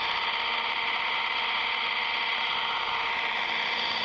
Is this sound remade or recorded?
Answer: recorded